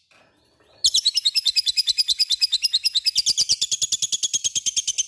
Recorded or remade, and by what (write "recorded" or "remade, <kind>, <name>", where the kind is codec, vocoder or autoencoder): recorded